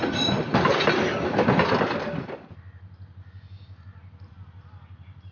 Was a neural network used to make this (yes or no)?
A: no